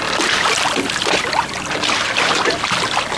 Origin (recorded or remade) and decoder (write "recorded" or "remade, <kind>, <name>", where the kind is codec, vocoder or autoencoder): recorded